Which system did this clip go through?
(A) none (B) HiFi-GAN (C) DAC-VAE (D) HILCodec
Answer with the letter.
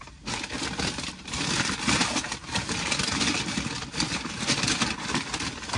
A